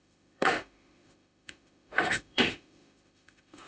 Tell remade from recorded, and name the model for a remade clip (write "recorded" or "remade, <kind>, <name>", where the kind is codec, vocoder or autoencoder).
remade, autoencoder, DAC-VAE